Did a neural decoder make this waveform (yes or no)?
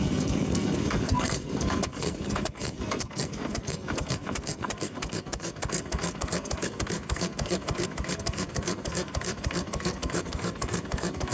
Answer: yes